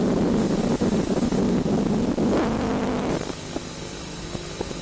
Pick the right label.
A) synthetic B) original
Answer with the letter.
B